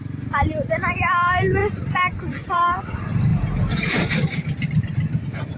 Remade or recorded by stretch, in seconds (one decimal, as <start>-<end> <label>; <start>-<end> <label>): 0.0-5.6 remade